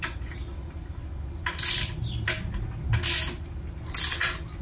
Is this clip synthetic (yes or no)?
no